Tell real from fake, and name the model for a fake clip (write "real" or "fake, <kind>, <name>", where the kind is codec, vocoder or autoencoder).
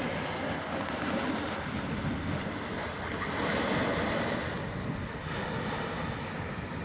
real